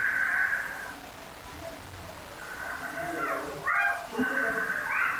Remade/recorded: recorded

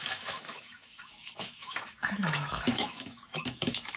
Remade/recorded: remade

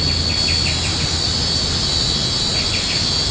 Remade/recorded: recorded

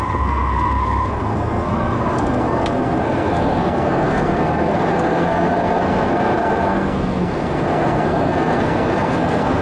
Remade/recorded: remade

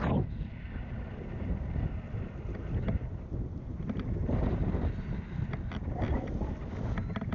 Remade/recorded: recorded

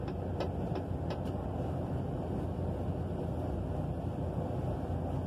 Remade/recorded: recorded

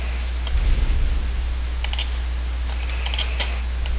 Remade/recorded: recorded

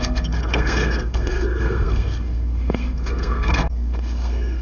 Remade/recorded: remade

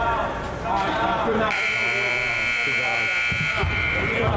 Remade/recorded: remade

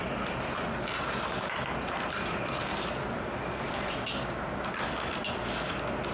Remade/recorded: recorded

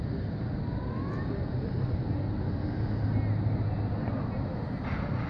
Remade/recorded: recorded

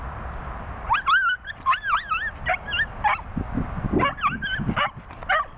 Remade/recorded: recorded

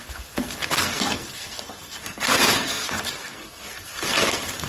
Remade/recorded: remade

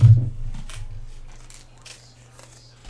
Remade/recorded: recorded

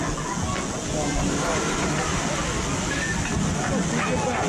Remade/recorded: recorded